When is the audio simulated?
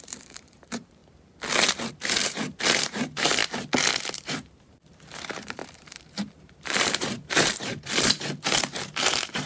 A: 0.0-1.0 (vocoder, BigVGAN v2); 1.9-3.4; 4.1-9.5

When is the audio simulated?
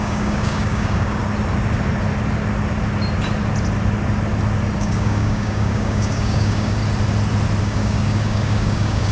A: 0.0-1.2 (codec, DAC); 4.8-6.8; 7.6-9.1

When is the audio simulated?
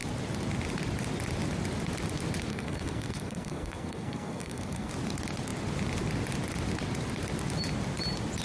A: 2.5-4.9 (codec, SNAC)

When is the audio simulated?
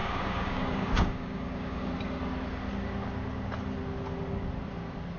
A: 0.0-1.9 (codec, DAC)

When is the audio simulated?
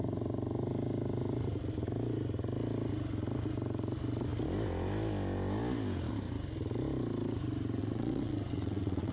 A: 7.8-9.1 (vocoder, WaveNeXt)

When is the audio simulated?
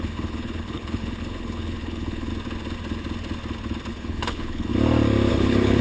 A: 0.0-2.3 (codec, HILCodec); 3.9-4.7; 5.3-5.8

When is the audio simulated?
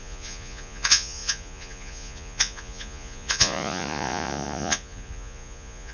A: 0.0-5.9 (vocoder, Vocos)